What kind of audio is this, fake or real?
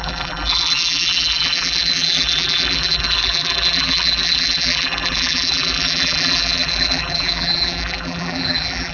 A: fake